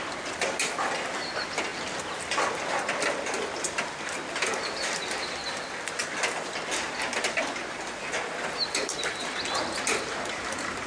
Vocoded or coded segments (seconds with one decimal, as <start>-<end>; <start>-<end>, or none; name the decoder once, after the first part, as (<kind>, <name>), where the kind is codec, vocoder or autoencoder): none